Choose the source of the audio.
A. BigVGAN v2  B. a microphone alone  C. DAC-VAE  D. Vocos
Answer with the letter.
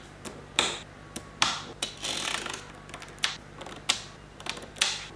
B